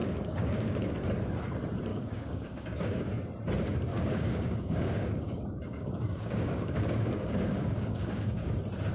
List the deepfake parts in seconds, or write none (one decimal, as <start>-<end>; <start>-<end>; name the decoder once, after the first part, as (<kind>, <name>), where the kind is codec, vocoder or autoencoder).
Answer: 0.0-0.9 (codec, DAC); 1.9-3.1; 3.9-8.5